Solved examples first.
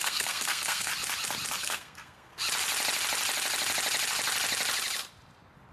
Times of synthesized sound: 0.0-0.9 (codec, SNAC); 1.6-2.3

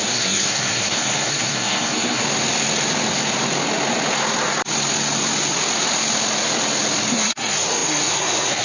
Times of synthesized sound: 0.0-2.2 (codec, SNAC); 7.1-8.6

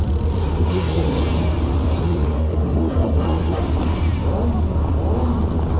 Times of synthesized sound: 0.4-1.2 (codec, SNAC); 2.0-3.6

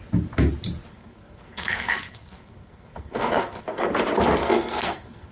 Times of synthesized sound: 0.9-3.9 (codec, SNAC); 4.4-5.3

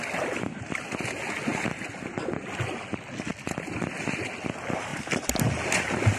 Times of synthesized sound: none

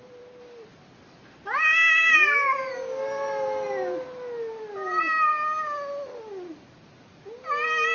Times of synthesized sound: none

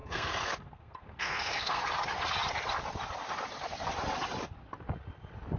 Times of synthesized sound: 0.0-1.8 (codec, SNAC)

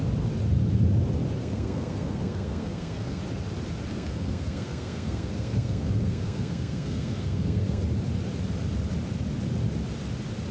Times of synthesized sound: 1.4-3.2 (codec, SNAC); 3.9-7.8